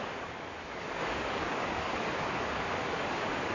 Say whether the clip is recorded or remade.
remade